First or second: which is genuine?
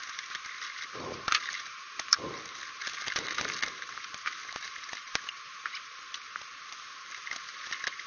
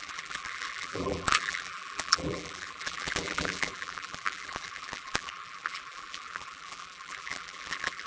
first